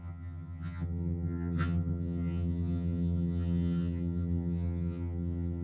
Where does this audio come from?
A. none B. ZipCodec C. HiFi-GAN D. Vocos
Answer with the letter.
C